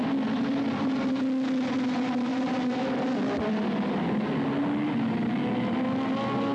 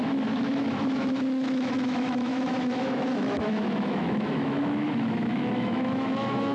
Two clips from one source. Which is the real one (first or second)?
first